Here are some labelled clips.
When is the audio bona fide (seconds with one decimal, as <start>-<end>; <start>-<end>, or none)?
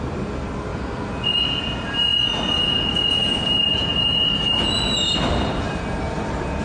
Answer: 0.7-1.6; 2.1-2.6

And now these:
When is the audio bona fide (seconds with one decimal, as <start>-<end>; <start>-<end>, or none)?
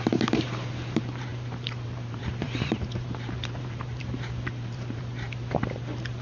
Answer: none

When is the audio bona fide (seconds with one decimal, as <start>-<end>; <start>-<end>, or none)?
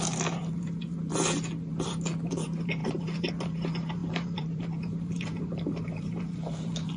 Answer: 1.1-1.7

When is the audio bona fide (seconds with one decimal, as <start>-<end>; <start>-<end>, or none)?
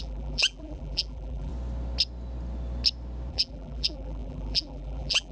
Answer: 1.5-3.3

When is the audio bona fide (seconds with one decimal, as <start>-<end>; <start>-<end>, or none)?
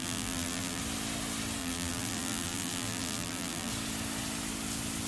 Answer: 0.8-1.6; 3.7-5.1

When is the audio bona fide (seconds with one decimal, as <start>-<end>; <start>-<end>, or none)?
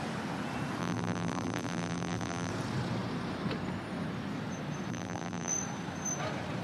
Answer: 0.0-0.8; 2.5-4.9; 5.5-6.6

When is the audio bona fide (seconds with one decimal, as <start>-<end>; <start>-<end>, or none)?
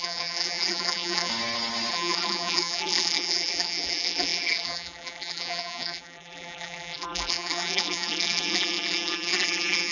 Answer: 1.3-1.9